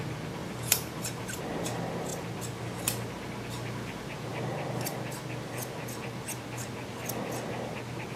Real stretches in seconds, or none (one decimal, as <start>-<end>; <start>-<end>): 0.0-0.4; 1.4-8.2